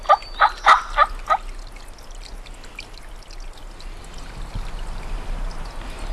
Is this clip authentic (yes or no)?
yes